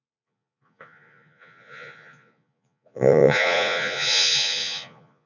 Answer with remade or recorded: remade